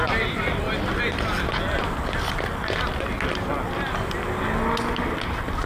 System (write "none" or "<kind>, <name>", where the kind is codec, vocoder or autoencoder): none